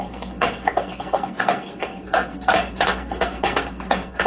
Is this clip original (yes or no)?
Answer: no